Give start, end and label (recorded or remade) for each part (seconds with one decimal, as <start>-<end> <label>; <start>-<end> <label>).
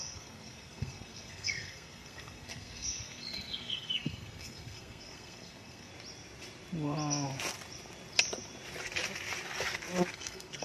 0.0-5.9 remade; 5.9-10.1 recorded; 10.1-10.6 remade